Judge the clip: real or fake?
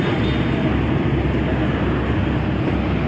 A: real